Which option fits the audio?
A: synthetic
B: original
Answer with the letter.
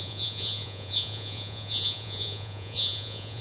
A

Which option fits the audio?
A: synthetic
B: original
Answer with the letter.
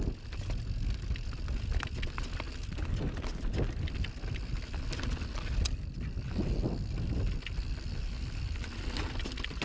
B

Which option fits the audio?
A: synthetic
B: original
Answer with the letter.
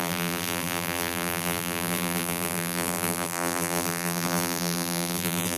A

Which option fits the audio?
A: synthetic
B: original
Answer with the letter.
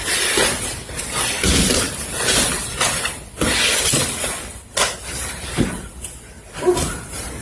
B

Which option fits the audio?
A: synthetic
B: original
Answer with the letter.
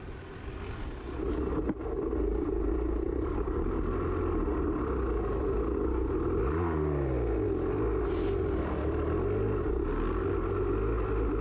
B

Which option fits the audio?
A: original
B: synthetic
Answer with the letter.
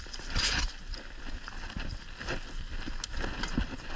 A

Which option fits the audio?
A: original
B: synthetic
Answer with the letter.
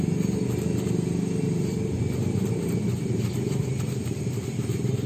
A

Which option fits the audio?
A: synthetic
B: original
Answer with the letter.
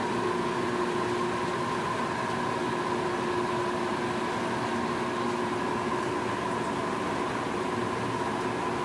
B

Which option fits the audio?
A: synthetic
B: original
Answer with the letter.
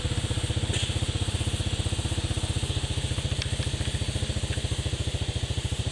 B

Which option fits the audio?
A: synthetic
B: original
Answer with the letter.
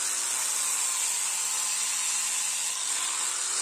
B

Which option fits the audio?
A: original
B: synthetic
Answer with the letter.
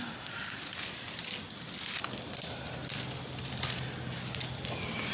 A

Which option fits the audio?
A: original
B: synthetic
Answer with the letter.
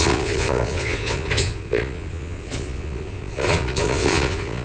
B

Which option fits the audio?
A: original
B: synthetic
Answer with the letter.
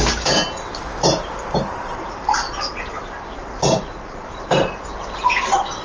A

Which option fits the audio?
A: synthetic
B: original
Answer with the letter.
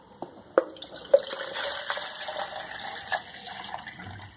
B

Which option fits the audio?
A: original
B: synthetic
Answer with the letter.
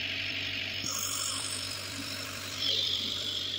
B